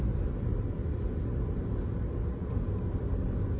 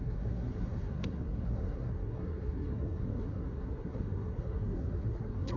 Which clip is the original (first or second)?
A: first